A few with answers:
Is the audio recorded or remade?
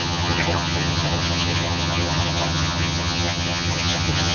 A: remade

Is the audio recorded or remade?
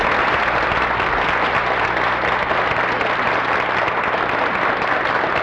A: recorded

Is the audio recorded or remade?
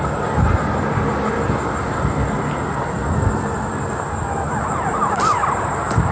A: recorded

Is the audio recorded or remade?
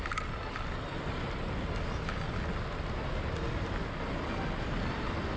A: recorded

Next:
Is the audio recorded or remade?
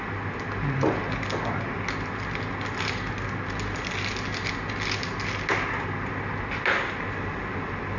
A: recorded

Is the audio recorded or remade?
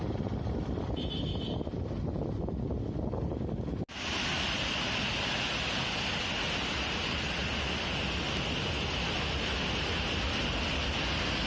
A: recorded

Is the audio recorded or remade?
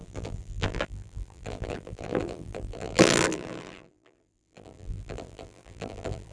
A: remade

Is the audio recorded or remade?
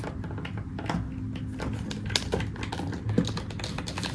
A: recorded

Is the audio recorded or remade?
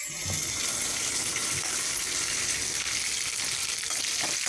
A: recorded